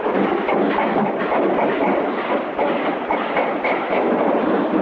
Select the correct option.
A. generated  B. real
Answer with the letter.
B